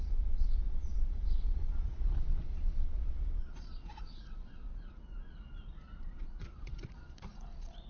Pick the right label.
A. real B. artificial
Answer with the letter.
B